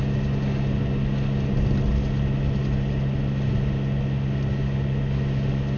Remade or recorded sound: recorded